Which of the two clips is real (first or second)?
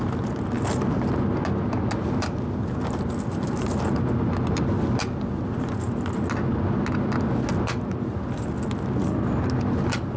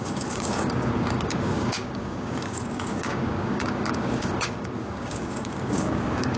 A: first